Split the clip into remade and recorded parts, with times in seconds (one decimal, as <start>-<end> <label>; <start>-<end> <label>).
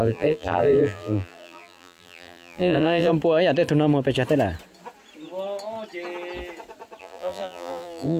0.0-3.1 remade; 3.1-7.0 recorded; 7.0-8.2 remade